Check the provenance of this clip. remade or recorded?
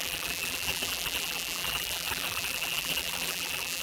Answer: remade